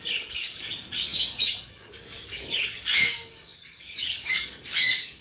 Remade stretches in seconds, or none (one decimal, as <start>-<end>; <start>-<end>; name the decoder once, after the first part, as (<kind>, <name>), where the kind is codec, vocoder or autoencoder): 0.0-5.2 (codec, DAC)